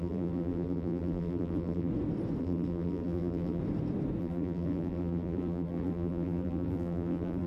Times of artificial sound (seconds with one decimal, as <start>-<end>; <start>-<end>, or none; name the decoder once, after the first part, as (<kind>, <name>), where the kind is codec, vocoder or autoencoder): 0.0-1.9 (vocoder, BigVGAN v2); 2.4-3.6; 4.2-7.5